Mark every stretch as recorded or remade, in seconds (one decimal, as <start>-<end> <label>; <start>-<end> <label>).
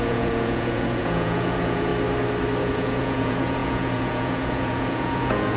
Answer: 0.0-1.9 remade; 1.9-2.6 recorded; 2.6-5.6 remade